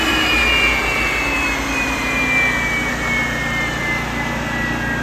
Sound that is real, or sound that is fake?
real